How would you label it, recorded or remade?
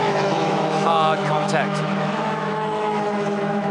remade